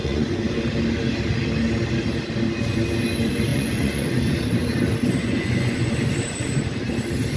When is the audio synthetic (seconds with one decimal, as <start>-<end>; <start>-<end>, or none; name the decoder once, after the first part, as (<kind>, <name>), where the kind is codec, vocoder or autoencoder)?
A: 0.0-0.6 (vocoder, Vocos); 3.5-4.2; 5.2-5.9